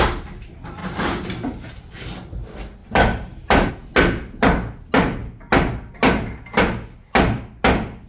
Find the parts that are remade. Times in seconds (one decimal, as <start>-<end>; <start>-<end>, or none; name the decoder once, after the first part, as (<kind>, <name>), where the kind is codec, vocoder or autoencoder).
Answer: 0.8-1.8 (vocoder, BigVGAN v2); 2.8-3.7